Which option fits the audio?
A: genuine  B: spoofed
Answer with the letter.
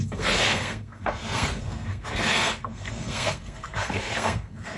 B